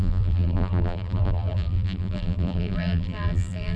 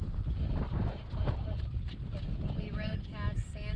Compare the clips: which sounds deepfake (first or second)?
first